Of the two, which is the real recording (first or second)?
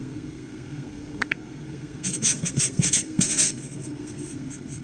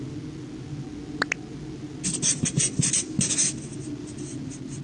second